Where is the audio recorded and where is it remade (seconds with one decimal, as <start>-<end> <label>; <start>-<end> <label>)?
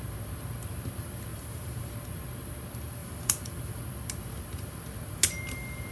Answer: 0.0-1.3 recorded; 1.3-1.9 remade; 1.9-3.0 recorded; 3.0-3.8 remade; 3.8-5.9 recorded